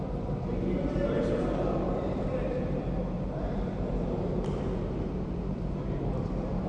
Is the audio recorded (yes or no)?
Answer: no